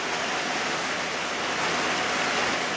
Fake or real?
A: real